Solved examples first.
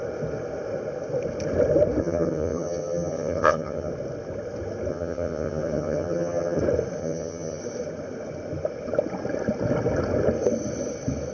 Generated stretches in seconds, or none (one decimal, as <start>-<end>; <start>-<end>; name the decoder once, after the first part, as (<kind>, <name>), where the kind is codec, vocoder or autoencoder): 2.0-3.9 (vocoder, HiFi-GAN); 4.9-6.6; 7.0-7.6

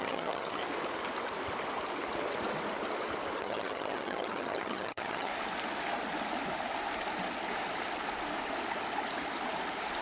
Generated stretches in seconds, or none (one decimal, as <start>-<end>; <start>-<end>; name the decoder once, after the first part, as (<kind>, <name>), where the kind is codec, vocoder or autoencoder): 0.0-0.6 (vocoder, HiFi-GAN); 3.4-5.3

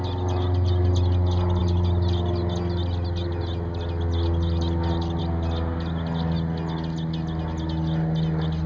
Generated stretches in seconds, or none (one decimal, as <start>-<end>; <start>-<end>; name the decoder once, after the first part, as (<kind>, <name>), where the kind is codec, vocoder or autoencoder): none

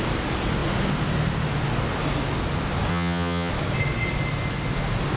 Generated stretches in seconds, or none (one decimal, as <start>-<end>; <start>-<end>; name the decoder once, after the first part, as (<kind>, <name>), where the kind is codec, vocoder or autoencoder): 2.9-3.5 (vocoder, HiFi-GAN)